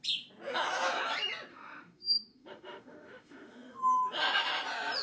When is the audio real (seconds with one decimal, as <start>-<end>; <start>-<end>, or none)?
0.0-1.5; 3.8-5.0